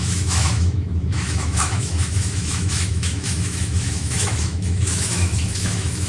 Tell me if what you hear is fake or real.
fake